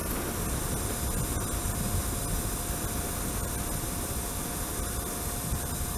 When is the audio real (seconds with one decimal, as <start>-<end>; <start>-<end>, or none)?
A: 0.0-6.0